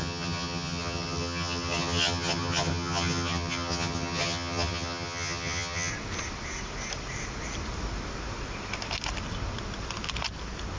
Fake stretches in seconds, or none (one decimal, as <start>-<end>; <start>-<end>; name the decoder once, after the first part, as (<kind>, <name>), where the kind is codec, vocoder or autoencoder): 0.0-5.9 (vocoder, HiFi-GAN)